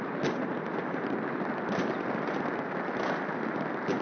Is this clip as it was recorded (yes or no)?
yes